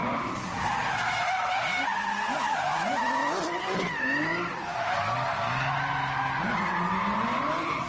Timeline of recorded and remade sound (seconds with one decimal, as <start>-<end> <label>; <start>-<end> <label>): 0.0-7.9 recorded